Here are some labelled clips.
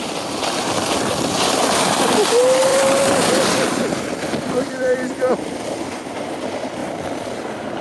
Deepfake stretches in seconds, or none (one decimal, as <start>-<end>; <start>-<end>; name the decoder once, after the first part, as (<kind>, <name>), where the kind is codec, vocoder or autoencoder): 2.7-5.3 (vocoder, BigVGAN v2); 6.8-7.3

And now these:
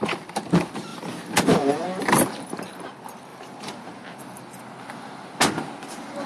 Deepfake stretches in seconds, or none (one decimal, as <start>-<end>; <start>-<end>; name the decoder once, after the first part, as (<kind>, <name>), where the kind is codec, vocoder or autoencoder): 0.9-2.0 (vocoder, BigVGAN v2); 3.3-4.2

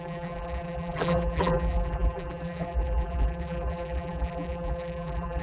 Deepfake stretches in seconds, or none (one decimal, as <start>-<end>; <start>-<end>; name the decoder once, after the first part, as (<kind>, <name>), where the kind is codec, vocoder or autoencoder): 0.0-5.4 (vocoder, BigVGAN v2)